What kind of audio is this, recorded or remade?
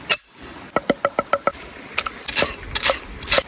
recorded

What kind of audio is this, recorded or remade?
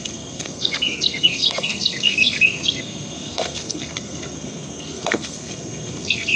remade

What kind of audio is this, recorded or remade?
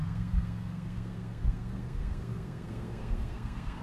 remade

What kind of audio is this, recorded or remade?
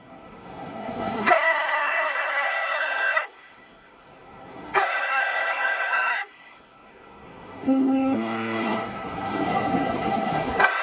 remade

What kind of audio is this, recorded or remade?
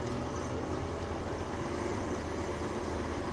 recorded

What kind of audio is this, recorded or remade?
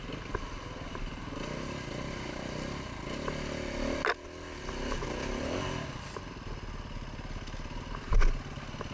recorded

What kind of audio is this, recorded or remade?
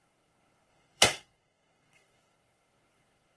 remade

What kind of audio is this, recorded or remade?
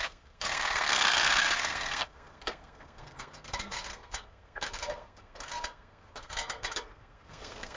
remade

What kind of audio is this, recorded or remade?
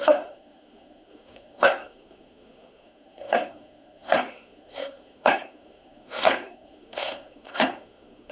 remade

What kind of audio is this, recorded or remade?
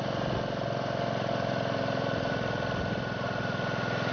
recorded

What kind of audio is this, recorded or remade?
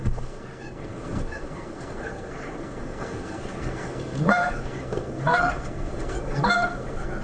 remade